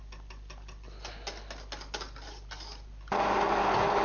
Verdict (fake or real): real